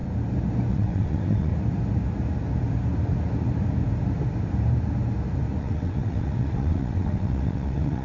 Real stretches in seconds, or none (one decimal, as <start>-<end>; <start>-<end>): 0.0-0.7; 1.5-5.6